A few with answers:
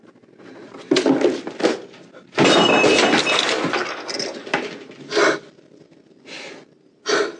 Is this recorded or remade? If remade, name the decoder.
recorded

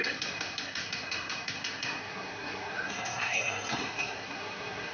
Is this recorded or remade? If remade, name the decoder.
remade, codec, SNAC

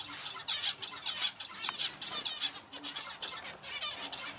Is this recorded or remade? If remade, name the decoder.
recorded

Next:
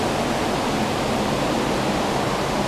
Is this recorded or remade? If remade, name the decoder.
recorded